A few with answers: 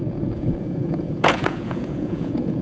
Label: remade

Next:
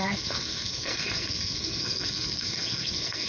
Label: remade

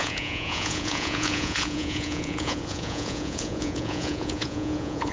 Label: remade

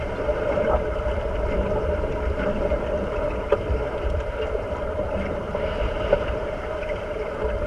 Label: remade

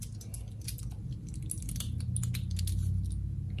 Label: recorded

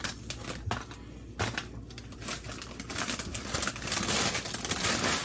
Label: recorded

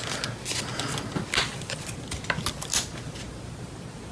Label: recorded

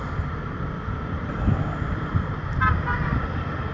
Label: remade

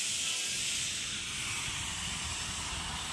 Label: recorded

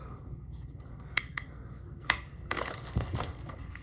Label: remade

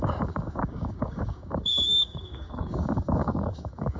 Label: remade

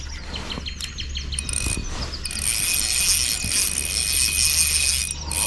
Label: recorded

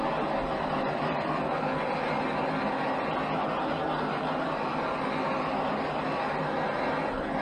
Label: recorded